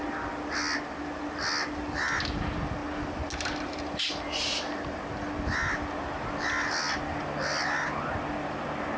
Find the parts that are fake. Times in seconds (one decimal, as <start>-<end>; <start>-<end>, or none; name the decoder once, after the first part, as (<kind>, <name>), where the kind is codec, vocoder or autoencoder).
none